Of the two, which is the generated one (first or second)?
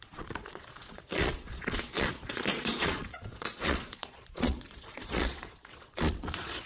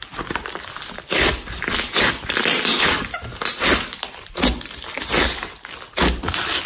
first